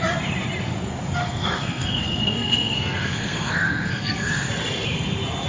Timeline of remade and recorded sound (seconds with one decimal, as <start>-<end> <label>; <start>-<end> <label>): 0.0-1.2 recorded; 1.2-4.5 remade; 4.5-5.5 recorded